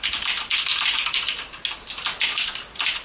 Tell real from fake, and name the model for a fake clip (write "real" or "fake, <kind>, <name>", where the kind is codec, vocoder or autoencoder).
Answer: real